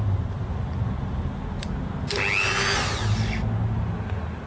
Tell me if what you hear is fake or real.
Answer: real